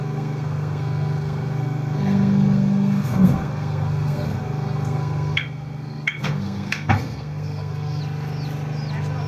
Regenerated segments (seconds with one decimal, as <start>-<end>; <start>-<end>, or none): 0.0-8.0